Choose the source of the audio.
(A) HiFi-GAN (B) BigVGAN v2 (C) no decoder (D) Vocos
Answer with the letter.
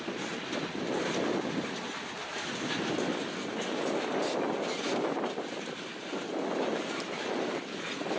C